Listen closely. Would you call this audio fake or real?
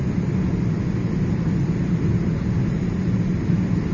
real